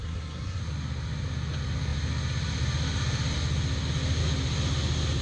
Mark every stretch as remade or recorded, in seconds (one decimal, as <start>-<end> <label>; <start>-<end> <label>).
0.0-0.6 remade; 0.6-5.2 recorded